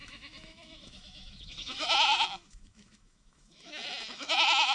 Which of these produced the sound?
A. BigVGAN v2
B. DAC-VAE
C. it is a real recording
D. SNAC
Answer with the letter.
B